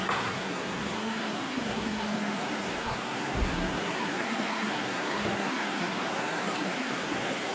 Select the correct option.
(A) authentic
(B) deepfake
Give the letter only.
B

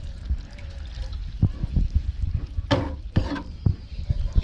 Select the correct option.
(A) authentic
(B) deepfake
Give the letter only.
A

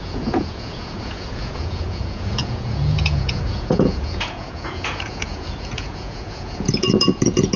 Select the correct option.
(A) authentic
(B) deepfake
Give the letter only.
B